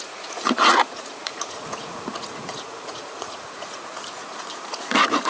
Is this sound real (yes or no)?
no